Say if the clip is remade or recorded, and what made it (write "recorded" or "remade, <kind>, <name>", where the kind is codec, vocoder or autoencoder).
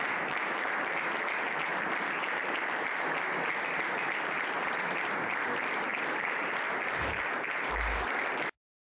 recorded